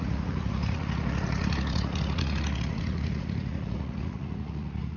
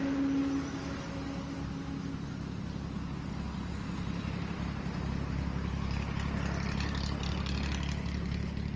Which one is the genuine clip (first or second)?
second